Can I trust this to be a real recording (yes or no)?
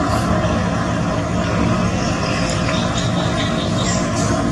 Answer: yes